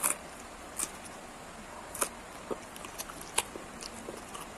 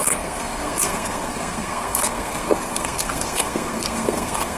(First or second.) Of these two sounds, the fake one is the second